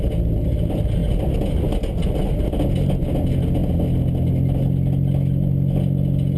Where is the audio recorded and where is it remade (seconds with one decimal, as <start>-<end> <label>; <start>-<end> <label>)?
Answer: 0.0-6.4 recorded